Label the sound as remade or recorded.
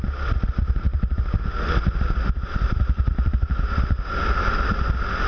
recorded